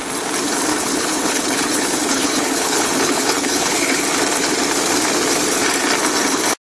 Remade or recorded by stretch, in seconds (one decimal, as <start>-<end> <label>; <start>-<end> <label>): 0.0-0.7 recorded; 0.7-4.0 remade; 4.0-6.6 recorded